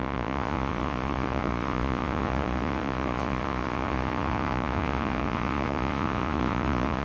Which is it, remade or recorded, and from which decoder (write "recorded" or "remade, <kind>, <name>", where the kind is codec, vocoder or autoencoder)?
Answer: remade, vocoder, Vocos